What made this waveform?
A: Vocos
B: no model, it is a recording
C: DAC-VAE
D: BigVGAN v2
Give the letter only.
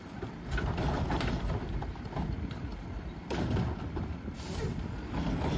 D